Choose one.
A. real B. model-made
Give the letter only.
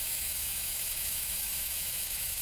B